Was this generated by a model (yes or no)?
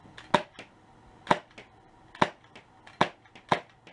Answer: no